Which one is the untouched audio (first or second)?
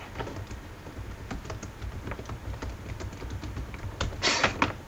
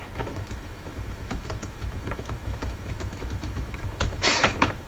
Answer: first